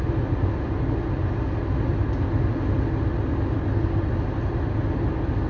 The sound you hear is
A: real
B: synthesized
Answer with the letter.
A